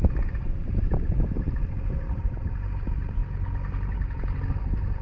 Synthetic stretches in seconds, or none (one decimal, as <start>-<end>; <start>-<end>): 0.0-3.2; 4.6-5.0